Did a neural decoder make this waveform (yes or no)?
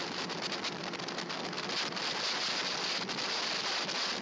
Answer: no